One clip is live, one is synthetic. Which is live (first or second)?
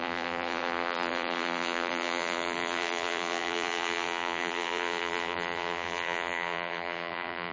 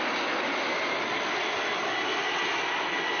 second